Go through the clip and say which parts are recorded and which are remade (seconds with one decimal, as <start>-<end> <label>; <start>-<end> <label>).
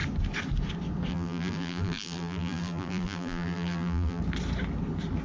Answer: 0.0-1.1 recorded; 1.1-4.2 remade; 4.2-5.2 recorded